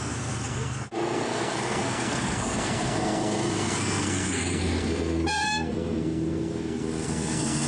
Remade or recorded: remade